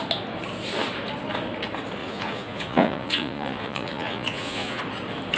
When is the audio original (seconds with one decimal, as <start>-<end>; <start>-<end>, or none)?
0.0-2.0; 4.8-5.4